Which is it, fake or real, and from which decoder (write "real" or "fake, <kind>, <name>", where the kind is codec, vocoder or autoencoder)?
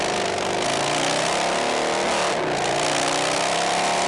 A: real